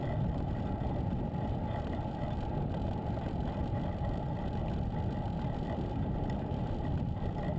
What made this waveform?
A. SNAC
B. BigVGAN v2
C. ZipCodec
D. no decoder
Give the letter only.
B